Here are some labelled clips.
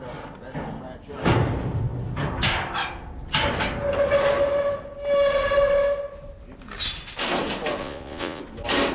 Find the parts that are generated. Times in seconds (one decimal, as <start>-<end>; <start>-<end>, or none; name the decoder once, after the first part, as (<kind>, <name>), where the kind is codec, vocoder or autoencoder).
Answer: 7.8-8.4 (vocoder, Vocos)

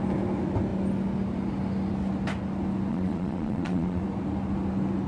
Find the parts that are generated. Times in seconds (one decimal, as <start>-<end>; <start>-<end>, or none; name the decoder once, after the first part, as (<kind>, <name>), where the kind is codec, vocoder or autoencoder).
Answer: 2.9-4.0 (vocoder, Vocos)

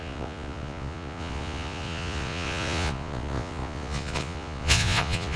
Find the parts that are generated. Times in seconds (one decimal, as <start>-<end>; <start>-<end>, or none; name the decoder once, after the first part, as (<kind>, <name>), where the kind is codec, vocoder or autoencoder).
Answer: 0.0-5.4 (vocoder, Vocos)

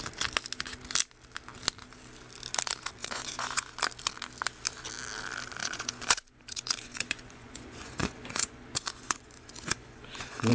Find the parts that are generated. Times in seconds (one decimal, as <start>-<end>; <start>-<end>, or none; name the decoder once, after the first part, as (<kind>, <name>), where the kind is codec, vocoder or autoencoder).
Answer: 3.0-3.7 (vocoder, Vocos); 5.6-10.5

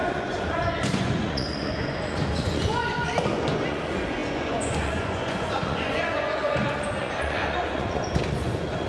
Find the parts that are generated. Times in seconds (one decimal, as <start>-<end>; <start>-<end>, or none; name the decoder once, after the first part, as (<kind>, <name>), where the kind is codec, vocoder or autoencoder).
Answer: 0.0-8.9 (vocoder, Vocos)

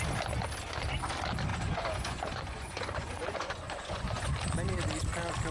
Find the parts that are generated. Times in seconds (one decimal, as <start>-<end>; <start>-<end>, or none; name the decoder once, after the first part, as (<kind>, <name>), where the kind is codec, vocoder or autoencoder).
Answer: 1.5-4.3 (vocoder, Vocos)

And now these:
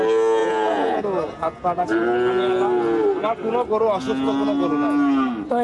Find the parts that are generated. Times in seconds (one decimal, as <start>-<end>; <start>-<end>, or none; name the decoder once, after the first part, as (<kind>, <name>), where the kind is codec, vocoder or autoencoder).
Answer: 0.4-1.0 (vocoder, Vocos)